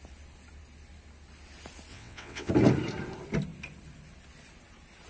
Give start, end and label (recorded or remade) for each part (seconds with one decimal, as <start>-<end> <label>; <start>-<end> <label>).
0.0-1.9 recorded; 1.9-2.5 remade; 2.5-5.1 recorded